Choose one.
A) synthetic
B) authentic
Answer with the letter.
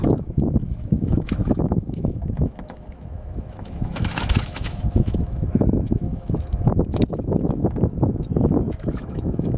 A